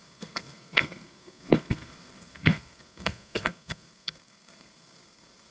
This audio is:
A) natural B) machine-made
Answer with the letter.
B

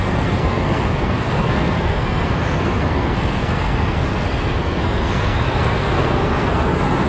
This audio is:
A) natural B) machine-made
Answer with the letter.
B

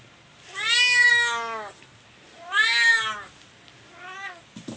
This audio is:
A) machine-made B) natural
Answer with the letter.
B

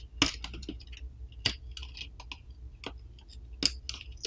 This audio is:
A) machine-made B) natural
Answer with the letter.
B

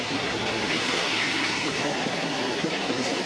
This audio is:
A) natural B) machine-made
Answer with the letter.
B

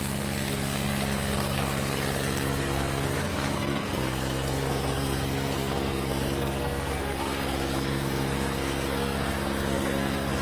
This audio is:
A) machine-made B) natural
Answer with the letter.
A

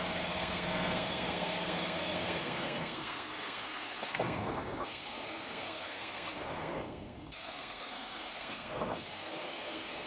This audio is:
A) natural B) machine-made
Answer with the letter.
B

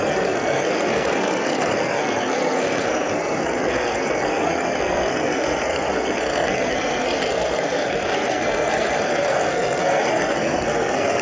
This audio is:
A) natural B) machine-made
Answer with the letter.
B